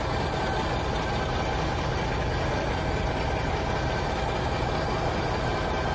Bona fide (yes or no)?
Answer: yes